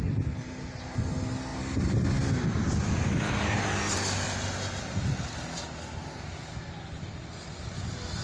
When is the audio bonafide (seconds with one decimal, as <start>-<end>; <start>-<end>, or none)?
0.0-8.2